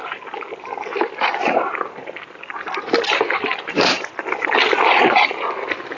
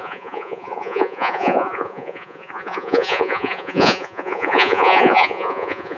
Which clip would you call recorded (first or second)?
first